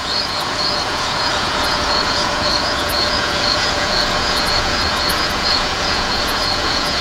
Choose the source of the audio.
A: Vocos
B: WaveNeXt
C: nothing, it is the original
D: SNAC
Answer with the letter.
A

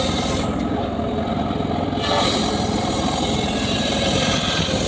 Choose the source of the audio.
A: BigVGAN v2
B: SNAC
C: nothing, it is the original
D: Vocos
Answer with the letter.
C